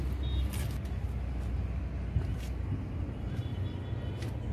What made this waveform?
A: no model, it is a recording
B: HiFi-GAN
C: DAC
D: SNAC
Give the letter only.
A